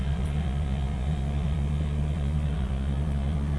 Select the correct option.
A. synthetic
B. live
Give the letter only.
A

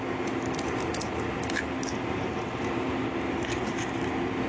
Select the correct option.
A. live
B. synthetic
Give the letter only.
A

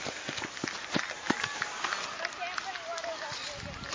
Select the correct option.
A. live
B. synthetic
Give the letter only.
A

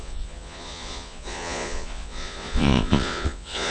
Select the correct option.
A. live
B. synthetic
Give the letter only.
B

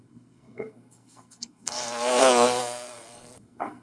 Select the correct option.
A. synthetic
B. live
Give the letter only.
A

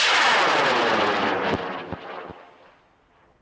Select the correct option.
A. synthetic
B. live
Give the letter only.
B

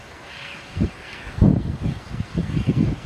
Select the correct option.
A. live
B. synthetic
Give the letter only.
B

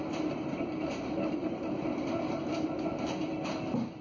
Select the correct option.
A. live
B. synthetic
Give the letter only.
A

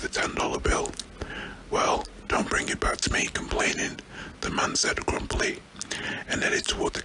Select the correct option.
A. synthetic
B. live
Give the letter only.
B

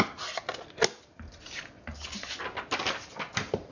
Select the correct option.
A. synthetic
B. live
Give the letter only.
B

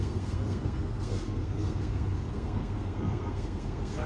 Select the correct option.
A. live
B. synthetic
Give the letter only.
B